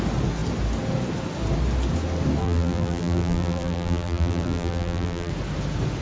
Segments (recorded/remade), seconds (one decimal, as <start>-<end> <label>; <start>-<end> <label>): 0.0-2.4 recorded; 2.4-5.3 remade; 5.3-6.0 recorded